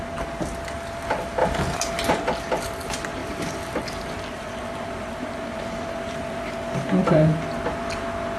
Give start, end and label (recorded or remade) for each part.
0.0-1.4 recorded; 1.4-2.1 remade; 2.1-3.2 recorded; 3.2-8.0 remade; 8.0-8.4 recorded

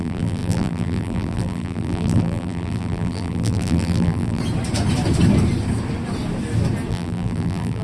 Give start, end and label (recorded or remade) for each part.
0.0-4.4 remade; 4.4-6.9 recorded; 6.9-7.8 remade

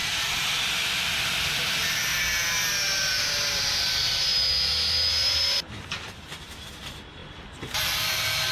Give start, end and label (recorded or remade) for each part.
0.0-1.4 recorded; 1.4-2.1 remade; 2.1-3.1 recorded; 3.1-4.3 remade; 4.3-5.1 recorded; 5.1-7.2 remade; 7.2-7.9 recorded; 7.9-8.5 remade

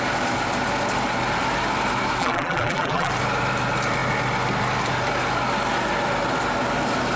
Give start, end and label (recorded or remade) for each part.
0.0-2.2 recorded; 2.2-3.1 remade; 3.1-7.2 recorded

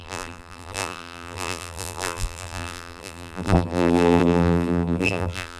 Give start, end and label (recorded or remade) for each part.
0.0-5.6 remade

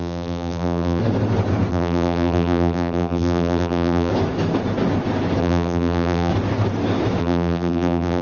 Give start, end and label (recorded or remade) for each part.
0.0-1.0 remade; 1.0-1.7 recorded; 1.7-4.1 remade; 4.1-5.4 recorded; 5.4-6.3 remade; 6.3-7.2 recorded; 7.2-8.2 remade

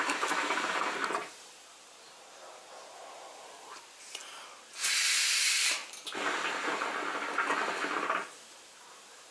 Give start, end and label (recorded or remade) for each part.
0.0-4.2 remade; 4.2-5.3 recorded; 5.3-5.8 remade; 5.8-8.5 recorded; 8.5-9.3 remade

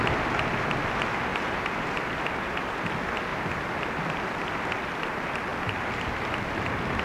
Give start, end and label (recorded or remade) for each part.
0.0-1.3 recorded; 1.3-2.7 remade; 2.7-3.3 recorded; 3.3-3.9 remade; 3.9-7.0 recorded